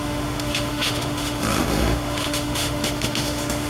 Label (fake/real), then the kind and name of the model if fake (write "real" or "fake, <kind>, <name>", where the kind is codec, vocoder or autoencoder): fake, autoencoder, DAC-VAE